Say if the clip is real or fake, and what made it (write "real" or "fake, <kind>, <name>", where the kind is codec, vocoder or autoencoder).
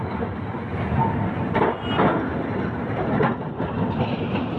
real